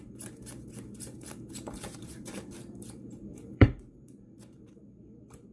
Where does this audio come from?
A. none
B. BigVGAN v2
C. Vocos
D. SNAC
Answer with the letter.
B